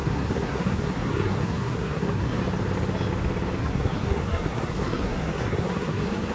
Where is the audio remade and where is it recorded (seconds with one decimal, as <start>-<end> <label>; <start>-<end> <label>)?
0.0-2.4 remade; 2.4-3.6 recorded; 3.6-6.3 remade